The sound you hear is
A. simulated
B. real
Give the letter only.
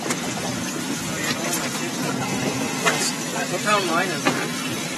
B